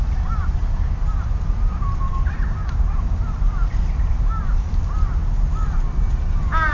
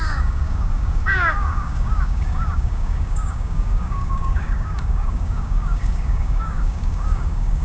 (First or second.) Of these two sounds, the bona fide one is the first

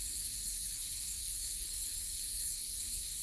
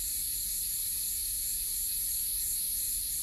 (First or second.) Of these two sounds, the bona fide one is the second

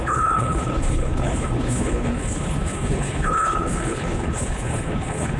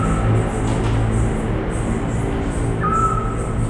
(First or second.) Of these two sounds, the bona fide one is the second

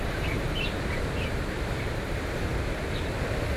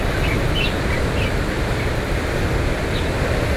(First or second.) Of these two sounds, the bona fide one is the second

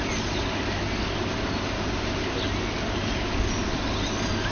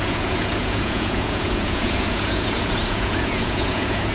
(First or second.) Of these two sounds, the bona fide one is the first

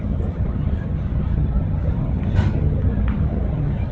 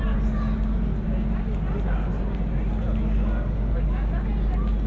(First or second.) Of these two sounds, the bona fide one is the second